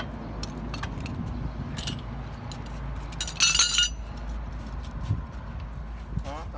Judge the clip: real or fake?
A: real